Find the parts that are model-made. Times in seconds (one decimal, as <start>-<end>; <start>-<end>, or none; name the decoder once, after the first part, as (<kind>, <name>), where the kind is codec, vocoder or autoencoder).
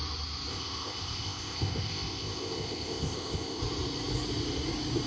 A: 0.5-3.6 (codec, ZipCodec)